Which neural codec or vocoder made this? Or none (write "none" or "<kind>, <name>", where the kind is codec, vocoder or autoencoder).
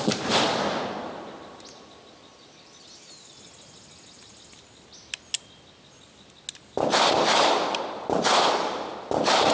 none